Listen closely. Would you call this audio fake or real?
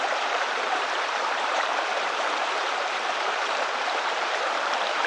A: fake